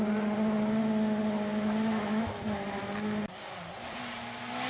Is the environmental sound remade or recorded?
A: recorded